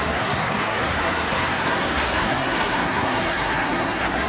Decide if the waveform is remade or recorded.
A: remade